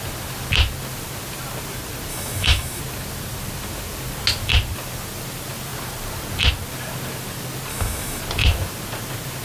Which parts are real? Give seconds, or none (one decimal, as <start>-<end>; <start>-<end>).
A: 0.0-2.1; 2.8-7.7; 8.2-9.4